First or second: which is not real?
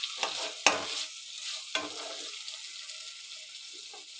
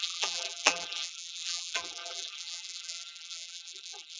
second